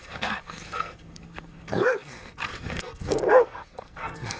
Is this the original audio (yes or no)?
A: no